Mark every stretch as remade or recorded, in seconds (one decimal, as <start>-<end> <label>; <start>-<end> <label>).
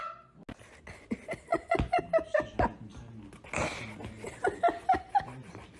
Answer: 0.0-1.5 recorded; 1.5-2.0 remade; 2.0-5.8 recorded